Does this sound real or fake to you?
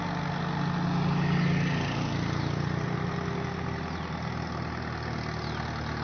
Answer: real